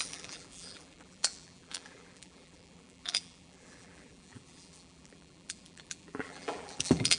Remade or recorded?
remade